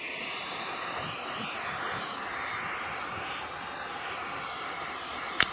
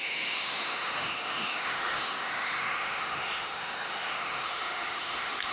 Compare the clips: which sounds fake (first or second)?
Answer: second